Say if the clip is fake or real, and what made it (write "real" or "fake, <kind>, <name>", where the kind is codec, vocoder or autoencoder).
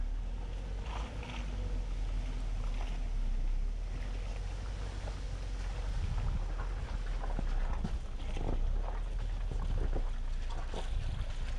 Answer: real